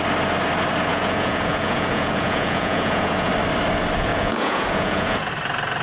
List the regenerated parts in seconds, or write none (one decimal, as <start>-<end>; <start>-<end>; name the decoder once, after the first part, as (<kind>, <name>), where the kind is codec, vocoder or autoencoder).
0.9-3.3 (vocoder, Vocos); 4.1-5.3